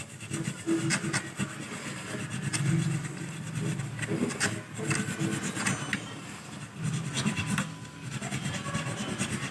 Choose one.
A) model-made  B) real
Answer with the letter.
B